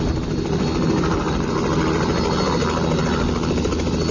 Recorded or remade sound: recorded